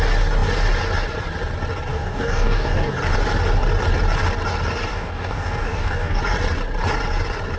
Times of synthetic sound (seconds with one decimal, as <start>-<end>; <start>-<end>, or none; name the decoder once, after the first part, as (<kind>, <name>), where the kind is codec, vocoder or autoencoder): 1.9-2.9 (codec, DAC); 4.9-6.2